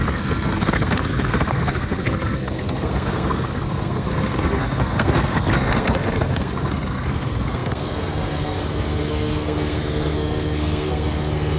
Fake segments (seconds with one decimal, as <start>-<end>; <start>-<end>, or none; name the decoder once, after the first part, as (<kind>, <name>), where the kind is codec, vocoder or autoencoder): 0.0-11.6 (codec, SNAC)